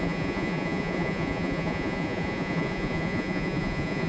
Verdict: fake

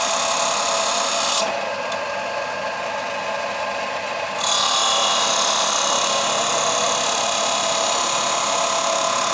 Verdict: real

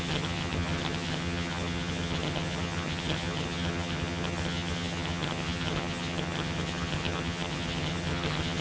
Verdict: fake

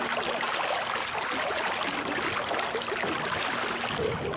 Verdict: real